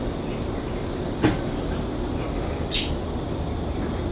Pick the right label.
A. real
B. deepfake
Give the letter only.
B